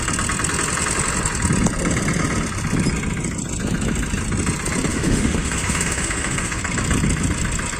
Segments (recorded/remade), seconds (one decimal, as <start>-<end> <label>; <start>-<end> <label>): 0.0-4.9 recorded; 4.9-6.6 remade; 6.6-7.8 recorded